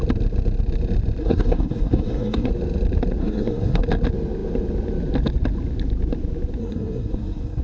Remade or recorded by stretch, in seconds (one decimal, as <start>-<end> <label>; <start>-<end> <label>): 0.0-1.2 recorded; 1.2-2.5 remade; 2.5-3.2 recorded; 3.2-3.8 remade; 3.8-6.6 recorded; 6.6-7.6 remade